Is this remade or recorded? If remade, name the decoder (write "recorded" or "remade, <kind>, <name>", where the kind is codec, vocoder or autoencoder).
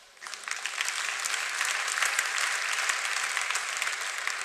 recorded